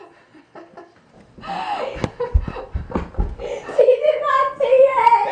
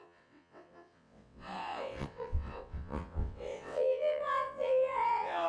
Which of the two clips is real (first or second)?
first